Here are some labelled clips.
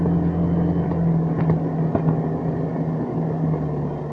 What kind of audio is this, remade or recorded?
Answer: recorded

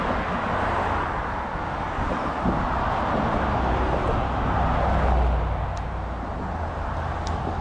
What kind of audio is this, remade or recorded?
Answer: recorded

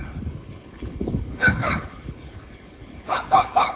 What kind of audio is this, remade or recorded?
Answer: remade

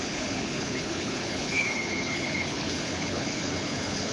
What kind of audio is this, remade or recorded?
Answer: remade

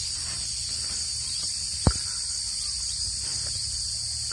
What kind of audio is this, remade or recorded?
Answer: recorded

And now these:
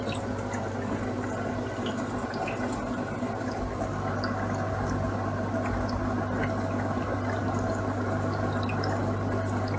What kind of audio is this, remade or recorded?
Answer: recorded